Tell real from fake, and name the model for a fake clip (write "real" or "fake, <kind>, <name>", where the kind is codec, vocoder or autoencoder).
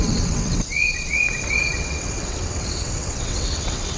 fake, vocoder, WaveNeXt